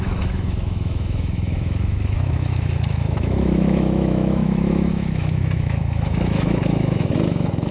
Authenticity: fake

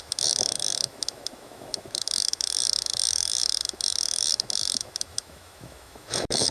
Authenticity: fake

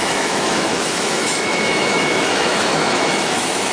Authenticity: fake